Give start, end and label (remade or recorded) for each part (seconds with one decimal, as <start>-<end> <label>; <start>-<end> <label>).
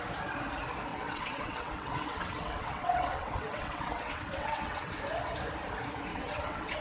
0.0-0.9 recorded; 0.9-5.0 remade; 5.0-6.1 recorded; 6.1-6.8 remade